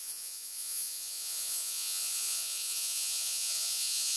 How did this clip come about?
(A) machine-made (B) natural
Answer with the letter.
A